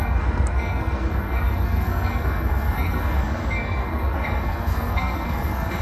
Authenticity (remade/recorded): remade